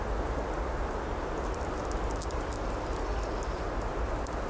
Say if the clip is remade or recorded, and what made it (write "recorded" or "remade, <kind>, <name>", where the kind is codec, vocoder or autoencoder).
recorded